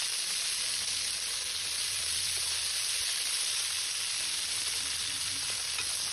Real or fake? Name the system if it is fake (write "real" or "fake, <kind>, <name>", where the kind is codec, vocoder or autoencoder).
real